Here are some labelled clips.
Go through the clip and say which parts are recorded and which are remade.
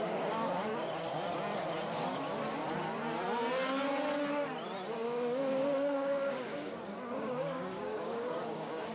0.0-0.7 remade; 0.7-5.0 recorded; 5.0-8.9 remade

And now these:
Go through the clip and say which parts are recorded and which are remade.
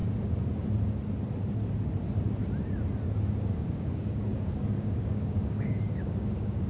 0.0-3.3 recorded; 3.3-6.7 remade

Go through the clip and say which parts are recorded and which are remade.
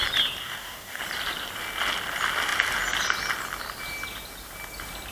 0.0-0.4 recorded; 0.4-1.0 remade; 1.0-5.1 recorded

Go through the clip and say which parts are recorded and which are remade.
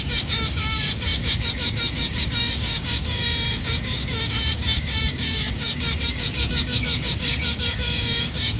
0.0-8.6 remade